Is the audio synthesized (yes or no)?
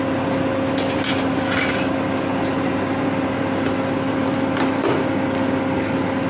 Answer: no